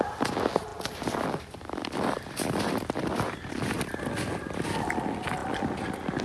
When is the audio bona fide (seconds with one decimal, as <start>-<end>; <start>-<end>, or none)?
0.0-6.2